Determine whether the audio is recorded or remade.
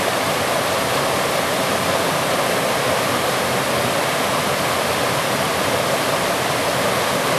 recorded